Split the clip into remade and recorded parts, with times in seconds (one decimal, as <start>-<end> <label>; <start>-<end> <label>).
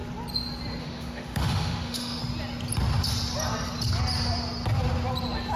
0.0-0.8 recorded; 0.8-2.2 remade; 2.2-5.6 recorded